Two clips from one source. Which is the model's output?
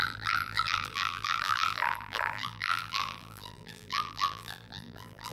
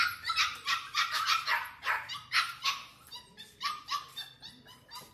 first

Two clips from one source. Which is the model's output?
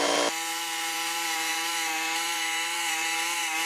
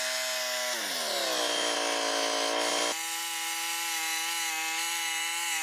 first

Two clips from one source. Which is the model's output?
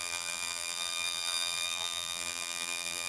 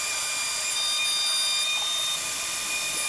first